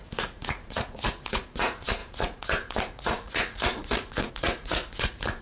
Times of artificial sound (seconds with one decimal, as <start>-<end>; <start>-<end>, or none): 0.0-5.4